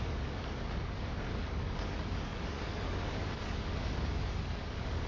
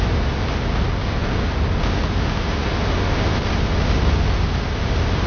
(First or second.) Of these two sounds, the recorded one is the second